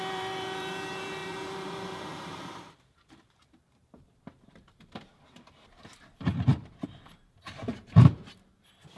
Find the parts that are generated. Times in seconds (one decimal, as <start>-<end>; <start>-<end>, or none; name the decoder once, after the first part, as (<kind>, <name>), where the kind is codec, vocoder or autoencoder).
0.0-8.1 (vocoder, BigVGAN v2)